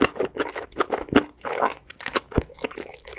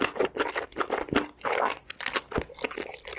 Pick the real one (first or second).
second